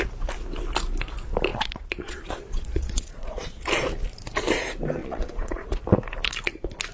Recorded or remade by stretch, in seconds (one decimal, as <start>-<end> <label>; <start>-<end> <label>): 0.0-1.5 recorded; 1.5-3.6 remade; 3.6-5.0 recorded; 5.0-5.8 remade; 5.8-6.9 recorded